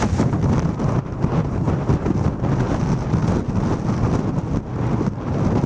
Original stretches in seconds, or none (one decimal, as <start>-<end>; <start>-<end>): 0.0-5.7